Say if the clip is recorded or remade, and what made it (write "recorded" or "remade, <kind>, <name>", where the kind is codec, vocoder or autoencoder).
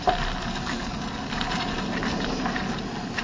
recorded